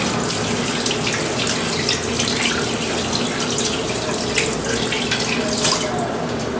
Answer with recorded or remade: recorded